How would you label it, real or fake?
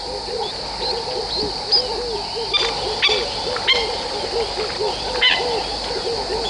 real